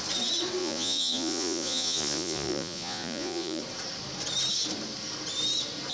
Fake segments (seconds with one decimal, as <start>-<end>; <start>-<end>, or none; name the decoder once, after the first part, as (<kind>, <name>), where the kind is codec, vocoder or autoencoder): 0.6-3.6 (vocoder, Vocos)